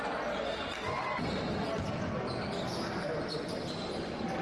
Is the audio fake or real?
real